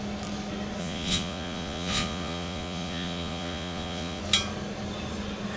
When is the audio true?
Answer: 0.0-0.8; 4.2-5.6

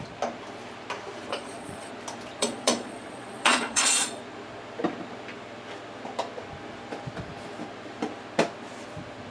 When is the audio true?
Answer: 0.0-1.3; 1.9-2.4; 4.2-9.3

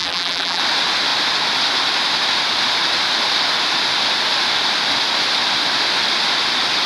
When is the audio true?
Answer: 0.6-6.9

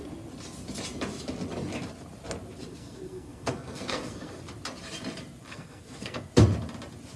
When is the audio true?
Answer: 0.0-2.7; 4.4-5.5; 6.3-7.2

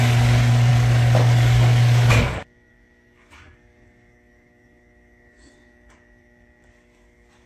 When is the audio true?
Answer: none

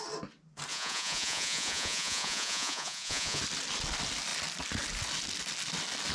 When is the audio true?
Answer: 0.0-0.7; 3.4-6.1

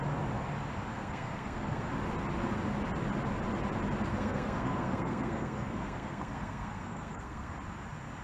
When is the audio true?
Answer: 0.0-0.9; 1.9-4.1; 7.5-8.2